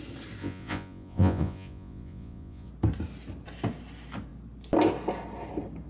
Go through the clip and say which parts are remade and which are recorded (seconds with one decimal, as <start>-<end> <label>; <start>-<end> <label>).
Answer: 0.0-0.4 recorded; 0.4-2.7 remade; 2.7-5.9 recorded